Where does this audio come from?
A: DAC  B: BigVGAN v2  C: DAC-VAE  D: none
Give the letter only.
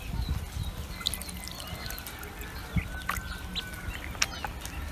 D